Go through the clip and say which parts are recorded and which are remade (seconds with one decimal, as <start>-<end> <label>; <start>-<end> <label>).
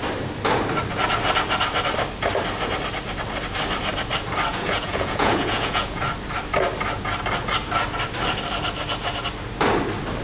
0.0-4.5 recorded; 4.5-6.0 remade; 6.0-10.2 recorded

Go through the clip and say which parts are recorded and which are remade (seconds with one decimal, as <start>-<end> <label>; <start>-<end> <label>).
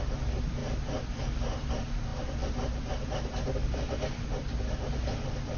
0.0-5.6 recorded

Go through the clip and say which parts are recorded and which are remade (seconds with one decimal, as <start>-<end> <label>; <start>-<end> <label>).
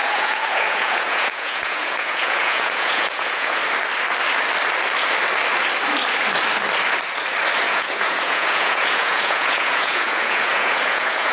0.0-3.6 remade; 3.6-7.7 recorded; 7.7-11.3 remade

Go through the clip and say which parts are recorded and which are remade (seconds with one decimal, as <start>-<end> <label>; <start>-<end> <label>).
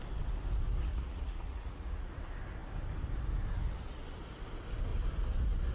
0.0-0.9 recorded; 0.9-2.1 remade; 2.1-5.7 recorded